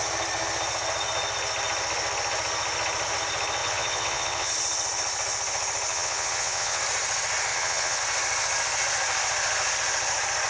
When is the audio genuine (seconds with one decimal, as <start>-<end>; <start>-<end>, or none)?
0.0-3.6; 4.5-5.9; 6.8-7.5; 8.0-10.5

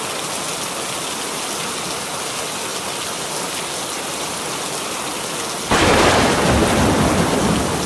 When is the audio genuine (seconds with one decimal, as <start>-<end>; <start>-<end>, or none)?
0.0-7.9

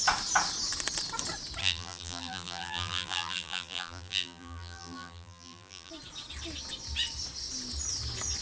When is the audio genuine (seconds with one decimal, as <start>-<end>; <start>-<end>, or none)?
0.0-1.6; 5.9-8.4